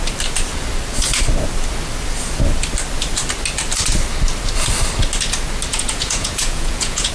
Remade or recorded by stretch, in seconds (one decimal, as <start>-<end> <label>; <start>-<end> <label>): 0.0-5.7 recorded; 5.7-7.1 remade